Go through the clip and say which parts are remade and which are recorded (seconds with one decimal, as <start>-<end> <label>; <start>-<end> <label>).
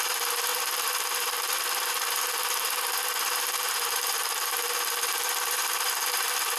0.0-6.6 remade